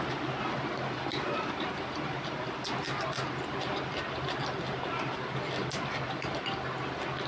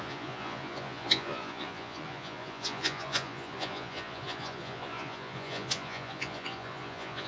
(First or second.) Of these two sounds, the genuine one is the first